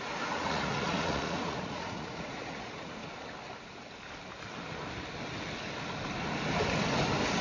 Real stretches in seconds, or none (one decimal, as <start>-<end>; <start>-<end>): 3.0-7.4